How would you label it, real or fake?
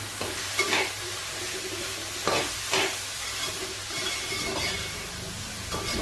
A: real